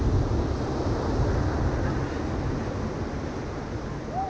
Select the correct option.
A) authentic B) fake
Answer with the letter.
A